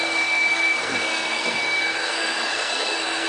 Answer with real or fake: fake